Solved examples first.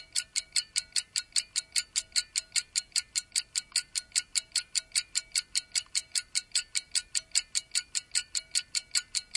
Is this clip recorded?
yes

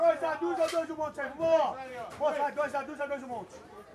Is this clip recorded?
no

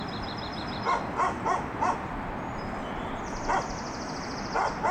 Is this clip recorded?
yes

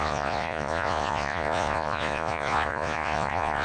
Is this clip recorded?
no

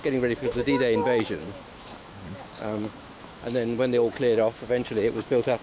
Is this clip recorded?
no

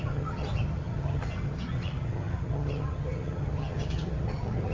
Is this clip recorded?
no